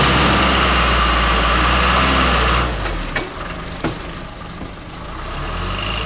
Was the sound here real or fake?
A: real